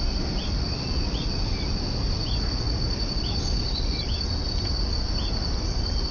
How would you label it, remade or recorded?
recorded